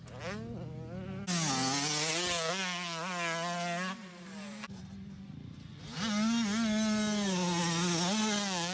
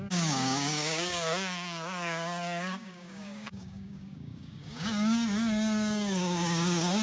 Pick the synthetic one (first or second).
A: second